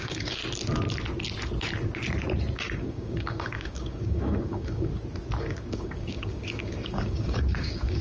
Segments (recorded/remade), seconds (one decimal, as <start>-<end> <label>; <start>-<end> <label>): 0.0-0.4 remade; 0.4-2.8 recorded; 2.8-4.9 remade; 4.9-5.4 recorded; 5.4-8.0 remade